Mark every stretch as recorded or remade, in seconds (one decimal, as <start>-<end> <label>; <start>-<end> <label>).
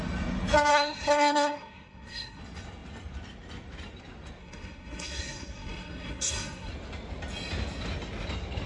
0.0-0.7 recorded; 0.7-2.4 remade; 2.4-4.4 recorded; 4.4-6.7 remade; 6.7-8.7 recorded